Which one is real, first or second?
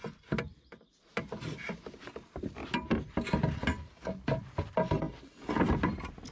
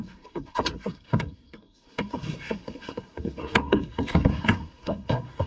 first